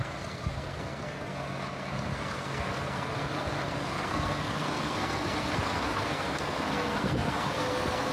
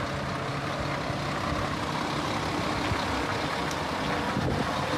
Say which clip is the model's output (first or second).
first